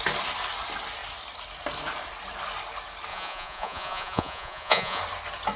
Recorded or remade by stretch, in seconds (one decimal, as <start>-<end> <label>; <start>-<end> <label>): 0.0-3.1 recorded; 3.1-5.0 remade; 5.0-5.6 recorded